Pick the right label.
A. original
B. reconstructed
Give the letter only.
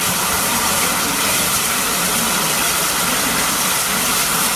A